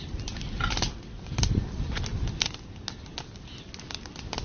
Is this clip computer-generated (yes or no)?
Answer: no